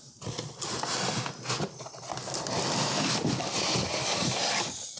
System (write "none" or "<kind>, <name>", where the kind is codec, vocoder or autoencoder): none